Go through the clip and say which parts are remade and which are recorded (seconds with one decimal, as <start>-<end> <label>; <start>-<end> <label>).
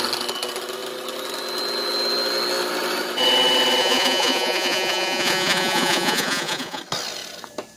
0.0-3.8 recorded; 3.8-6.8 remade; 6.8-7.8 recorded